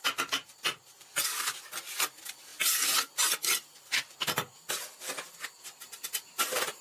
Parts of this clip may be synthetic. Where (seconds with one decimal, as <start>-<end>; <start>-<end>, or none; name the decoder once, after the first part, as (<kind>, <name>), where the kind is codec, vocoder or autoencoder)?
none